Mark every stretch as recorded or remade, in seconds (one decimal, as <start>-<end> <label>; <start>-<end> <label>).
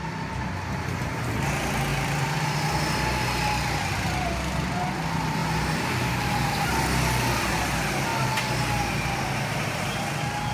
0.0-1.9 recorded; 1.9-2.8 remade; 2.8-10.5 recorded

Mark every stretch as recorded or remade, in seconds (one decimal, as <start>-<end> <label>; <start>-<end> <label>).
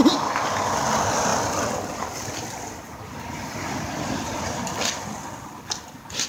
0.0-6.3 recorded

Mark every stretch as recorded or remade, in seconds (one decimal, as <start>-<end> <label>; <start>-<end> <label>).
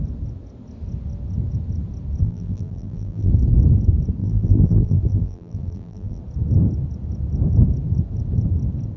0.0-2.2 recorded; 2.2-3.3 remade; 3.3-4.2 recorded; 4.2-6.2 remade; 6.2-9.0 recorded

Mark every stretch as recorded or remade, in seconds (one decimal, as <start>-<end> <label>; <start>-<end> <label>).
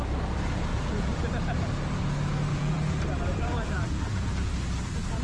0.0-0.7 recorded; 0.7-1.3 remade; 1.3-2.5 recorded; 2.5-3.0 remade; 3.0-3.5 recorded; 3.5-4.5 remade; 4.5-5.2 recorded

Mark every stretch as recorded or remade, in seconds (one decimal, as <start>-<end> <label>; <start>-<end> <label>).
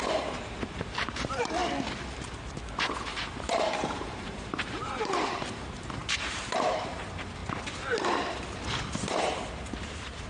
0.0-1.6 remade; 1.6-3.3 recorded; 3.3-7.4 remade; 7.4-8.9 recorded; 8.9-10.3 remade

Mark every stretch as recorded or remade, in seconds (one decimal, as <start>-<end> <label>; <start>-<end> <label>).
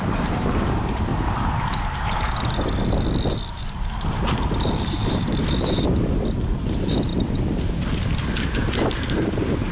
0.0-1.1 remade; 1.1-3.5 recorded; 3.5-7.1 remade; 7.1-8.9 recorded; 8.9-9.7 remade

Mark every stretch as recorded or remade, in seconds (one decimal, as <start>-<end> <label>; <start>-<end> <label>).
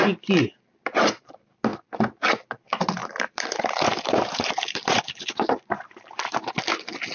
0.0-3.0 recorded; 3.0-6.5 remade; 6.5-7.1 recorded